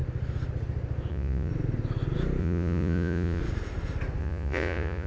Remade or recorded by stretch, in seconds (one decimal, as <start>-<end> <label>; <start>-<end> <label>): 0.0-1.1 recorded; 1.1-1.5 remade; 1.5-2.4 recorded; 2.4-3.4 remade; 3.4-4.2 recorded; 4.2-5.1 remade